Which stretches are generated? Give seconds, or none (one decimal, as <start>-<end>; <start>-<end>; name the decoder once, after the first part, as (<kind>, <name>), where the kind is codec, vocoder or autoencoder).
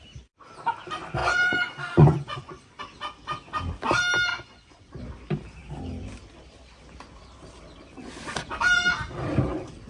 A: 1.2-2.8 (vocoder, Vocos); 4.3-5.0